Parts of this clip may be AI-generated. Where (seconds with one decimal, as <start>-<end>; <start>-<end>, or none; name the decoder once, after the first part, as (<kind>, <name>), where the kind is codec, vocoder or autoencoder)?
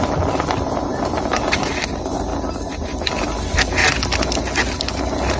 none